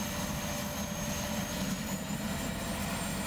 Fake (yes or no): no